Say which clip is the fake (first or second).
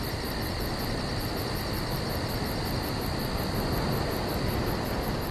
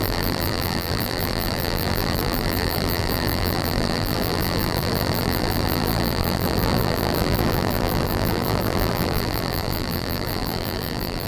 second